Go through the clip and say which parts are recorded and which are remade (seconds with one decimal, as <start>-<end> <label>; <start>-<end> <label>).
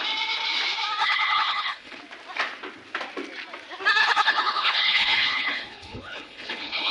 0.0-1.0 recorded; 1.0-2.0 remade; 2.0-4.0 recorded; 4.0-6.9 remade